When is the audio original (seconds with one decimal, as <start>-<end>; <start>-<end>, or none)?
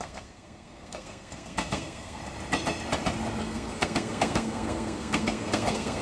2.2-3.4